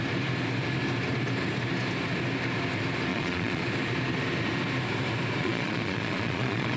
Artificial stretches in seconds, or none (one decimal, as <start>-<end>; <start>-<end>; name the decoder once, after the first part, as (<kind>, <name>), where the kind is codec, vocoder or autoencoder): 3.1-3.6 (vocoder, Vocos); 5.4-6.8